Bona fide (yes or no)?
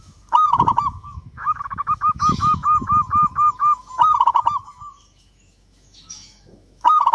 no